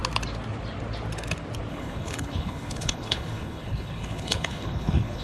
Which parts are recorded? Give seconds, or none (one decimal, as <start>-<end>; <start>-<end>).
0.0-1.7